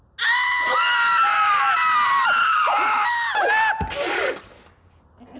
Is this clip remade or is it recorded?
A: recorded